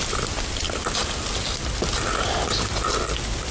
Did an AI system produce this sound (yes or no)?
no